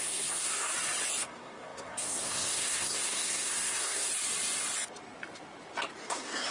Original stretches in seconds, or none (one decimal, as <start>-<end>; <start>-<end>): 0.7-1.2; 4.1-6.1